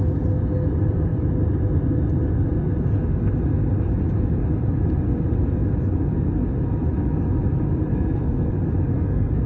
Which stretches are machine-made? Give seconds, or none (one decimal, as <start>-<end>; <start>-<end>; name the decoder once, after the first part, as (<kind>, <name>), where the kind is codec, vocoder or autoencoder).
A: 7.9-8.5 (codec, SNAC); 8.9-9.5